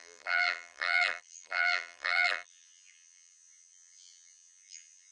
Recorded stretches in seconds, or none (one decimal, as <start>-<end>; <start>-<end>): none